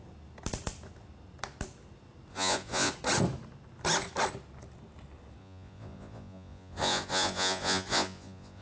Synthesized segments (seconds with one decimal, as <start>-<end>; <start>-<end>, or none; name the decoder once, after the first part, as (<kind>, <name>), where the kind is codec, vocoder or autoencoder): 2.3-2.9 (vocoder, Vocos); 5.4-8.6